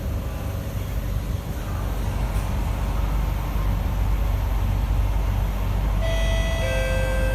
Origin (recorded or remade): recorded